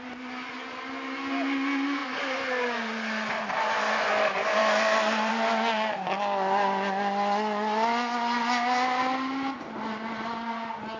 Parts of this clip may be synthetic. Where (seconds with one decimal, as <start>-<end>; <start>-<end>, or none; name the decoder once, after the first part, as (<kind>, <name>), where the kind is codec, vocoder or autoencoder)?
none

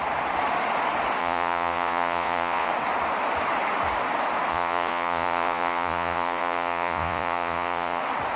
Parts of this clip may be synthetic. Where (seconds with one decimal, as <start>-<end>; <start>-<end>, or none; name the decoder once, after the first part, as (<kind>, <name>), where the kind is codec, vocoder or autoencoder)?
1.2-2.7 (vocoder, Vocos); 4.5-8.0